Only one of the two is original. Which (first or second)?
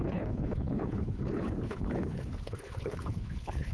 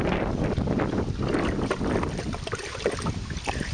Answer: second